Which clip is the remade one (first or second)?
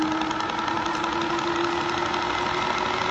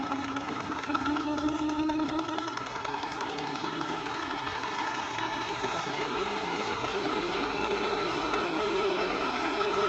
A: second